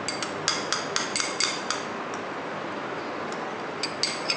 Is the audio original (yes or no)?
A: yes